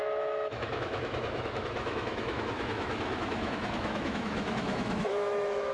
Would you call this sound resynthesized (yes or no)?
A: yes